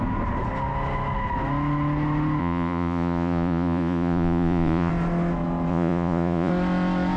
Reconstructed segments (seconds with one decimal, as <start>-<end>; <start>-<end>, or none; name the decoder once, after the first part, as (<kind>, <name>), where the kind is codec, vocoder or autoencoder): 2.4-4.9 (vocoder, Vocos); 5.7-6.5